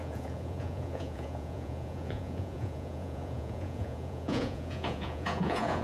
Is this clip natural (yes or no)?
no